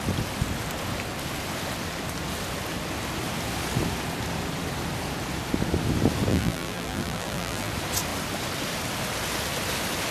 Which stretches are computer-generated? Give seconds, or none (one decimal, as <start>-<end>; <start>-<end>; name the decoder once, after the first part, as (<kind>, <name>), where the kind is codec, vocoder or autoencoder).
6.3-7.7 (vocoder, BigVGAN v2)